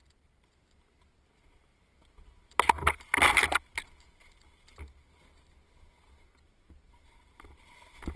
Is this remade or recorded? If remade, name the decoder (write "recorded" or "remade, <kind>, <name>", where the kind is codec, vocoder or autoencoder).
recorded